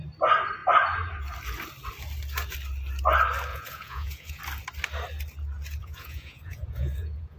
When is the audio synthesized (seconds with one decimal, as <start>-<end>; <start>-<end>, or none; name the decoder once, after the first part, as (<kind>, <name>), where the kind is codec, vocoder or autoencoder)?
3.5-4.4 (vocoder, Vocos); 5.8-7.4